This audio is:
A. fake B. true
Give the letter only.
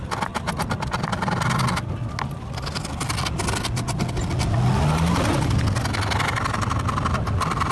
B